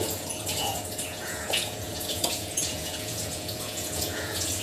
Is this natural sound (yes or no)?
no